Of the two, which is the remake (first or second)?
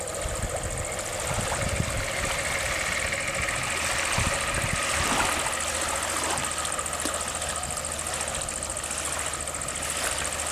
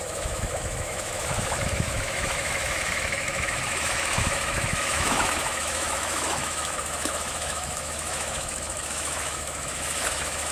second